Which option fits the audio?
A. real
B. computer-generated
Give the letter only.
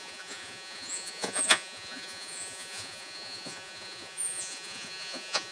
B